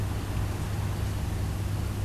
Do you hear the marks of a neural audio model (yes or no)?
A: no